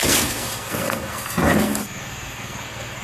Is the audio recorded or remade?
remade